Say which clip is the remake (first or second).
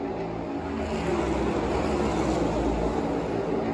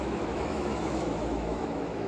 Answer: second